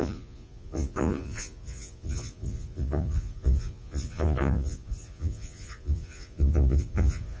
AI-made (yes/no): yes